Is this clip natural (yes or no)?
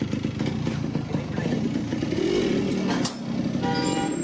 yes